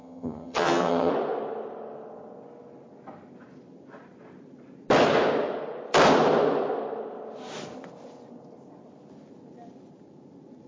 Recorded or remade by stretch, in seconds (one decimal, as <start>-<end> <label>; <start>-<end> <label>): 0.0-1.1 remade; 1.1-10.7 recorded